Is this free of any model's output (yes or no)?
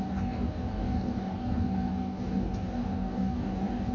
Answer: no